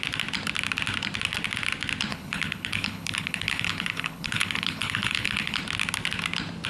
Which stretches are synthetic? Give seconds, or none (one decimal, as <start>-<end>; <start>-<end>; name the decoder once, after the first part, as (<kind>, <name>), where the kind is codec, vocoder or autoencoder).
2.1-5.6 (codec, HILCodec)

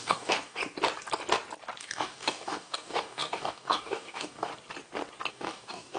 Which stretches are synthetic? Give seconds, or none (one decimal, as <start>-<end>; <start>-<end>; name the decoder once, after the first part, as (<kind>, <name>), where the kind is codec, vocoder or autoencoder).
0.0-0.6 (codec, DAC); 1.8-4.5; 5.3-6.0

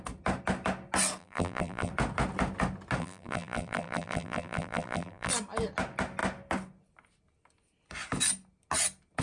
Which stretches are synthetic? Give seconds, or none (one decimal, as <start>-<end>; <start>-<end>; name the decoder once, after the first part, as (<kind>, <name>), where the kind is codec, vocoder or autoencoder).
1.2-1.9 (vocoder, BigVGAN v2); 3.0-5.3

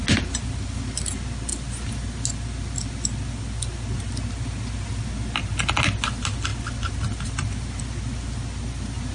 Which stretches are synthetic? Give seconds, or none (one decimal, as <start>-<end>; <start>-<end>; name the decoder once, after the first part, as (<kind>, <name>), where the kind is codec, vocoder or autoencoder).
none